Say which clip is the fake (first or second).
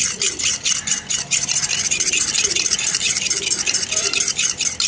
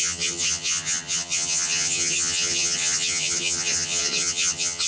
second